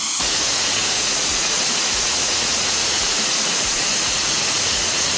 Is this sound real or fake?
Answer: fake